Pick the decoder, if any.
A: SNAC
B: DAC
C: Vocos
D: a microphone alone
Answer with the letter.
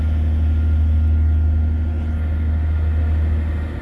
D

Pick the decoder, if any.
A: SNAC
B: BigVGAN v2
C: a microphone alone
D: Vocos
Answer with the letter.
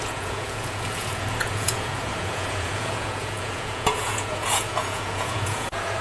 D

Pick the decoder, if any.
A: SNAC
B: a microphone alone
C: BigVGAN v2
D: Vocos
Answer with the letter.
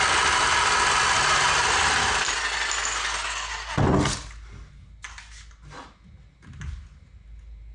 B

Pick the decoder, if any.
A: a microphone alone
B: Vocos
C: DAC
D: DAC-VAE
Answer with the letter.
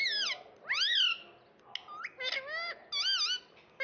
A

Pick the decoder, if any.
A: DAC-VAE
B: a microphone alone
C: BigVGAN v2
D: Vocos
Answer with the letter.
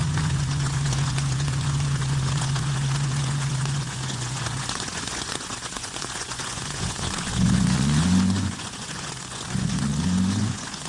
D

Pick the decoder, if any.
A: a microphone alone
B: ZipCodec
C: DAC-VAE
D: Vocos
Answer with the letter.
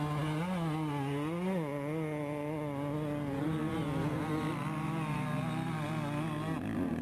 A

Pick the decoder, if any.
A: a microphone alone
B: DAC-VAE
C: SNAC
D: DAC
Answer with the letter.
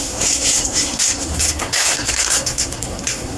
C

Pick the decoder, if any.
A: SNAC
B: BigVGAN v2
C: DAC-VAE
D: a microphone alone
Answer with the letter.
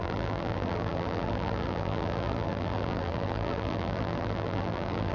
B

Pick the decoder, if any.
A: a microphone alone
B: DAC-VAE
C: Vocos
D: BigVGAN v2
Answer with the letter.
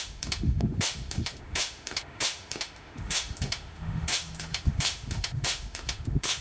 B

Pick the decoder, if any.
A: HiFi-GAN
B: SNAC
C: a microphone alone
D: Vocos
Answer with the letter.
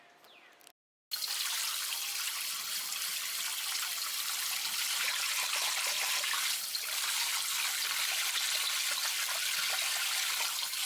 C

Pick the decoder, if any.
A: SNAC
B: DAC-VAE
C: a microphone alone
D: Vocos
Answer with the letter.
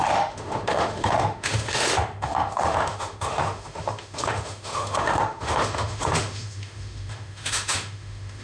B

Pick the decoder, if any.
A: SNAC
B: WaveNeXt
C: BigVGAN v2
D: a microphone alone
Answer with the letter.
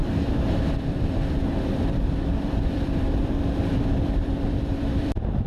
C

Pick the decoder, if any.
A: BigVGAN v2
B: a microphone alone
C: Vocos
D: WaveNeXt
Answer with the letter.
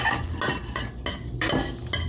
B